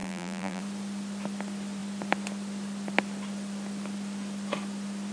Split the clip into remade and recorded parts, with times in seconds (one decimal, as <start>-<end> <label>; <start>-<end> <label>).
0.0-0.6 remade; 0.6-5.1 recorded